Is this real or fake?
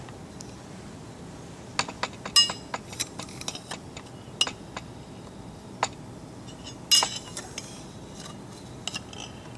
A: real